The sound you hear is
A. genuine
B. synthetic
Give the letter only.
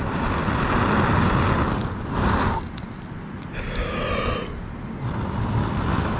A